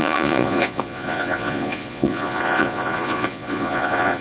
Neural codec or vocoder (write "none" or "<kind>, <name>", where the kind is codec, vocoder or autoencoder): vocoder, Vocos